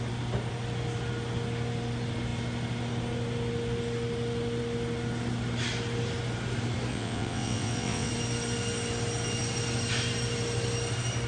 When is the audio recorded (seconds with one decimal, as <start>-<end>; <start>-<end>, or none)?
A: 0.0-6.9; 8.1-11.3